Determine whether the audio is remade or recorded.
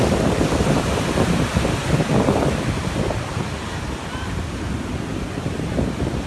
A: recorded